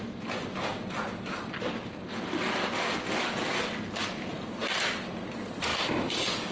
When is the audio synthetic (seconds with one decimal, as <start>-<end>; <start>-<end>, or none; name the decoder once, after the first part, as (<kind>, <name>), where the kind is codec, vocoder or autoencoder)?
none